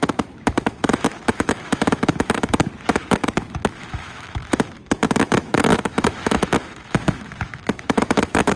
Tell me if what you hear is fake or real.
fake